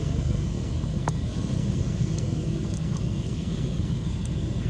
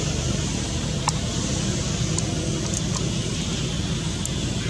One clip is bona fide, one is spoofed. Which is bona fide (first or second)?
second